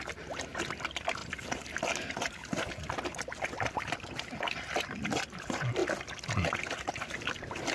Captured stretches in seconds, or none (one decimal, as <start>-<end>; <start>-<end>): 1.2-4.4